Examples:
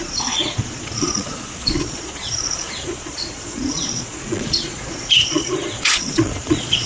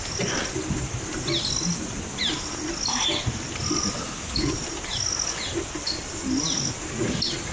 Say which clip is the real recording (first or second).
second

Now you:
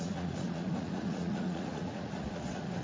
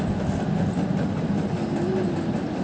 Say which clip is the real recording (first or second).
second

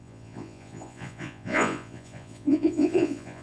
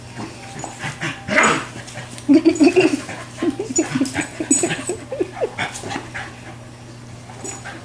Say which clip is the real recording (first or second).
second